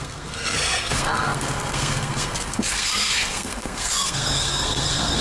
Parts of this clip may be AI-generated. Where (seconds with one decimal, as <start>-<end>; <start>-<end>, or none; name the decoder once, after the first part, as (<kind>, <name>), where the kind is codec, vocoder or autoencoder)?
0.0-5.2 (codec, SNAC)